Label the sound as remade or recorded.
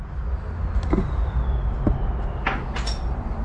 recorded